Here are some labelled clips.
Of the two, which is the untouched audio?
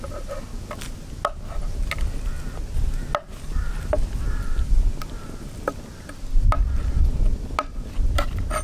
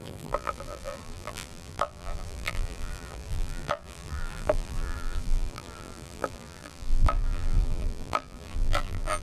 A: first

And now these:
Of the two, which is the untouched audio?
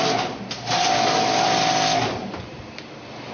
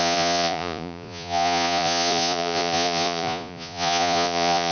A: first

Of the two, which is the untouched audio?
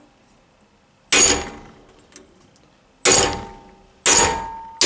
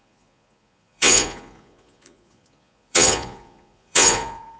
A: first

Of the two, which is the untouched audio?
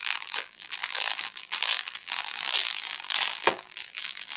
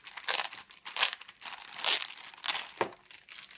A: second